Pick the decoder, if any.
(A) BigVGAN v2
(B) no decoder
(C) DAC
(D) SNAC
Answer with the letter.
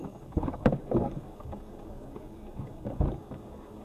C